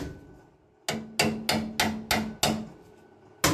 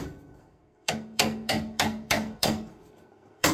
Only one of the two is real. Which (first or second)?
first